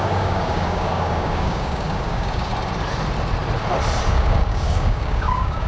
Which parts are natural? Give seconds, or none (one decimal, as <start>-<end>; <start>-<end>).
2.5-4.1